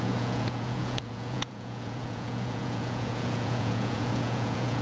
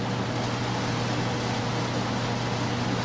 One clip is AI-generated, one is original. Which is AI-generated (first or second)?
first